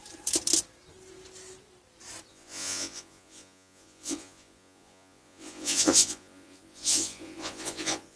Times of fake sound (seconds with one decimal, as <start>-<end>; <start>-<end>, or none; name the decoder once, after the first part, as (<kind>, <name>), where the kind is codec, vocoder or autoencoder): 2.3-8.2 (vocoder, Vocos)